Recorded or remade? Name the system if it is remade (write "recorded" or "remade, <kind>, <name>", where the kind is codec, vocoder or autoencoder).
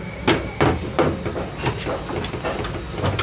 recorded